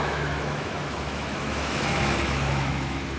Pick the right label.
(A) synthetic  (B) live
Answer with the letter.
A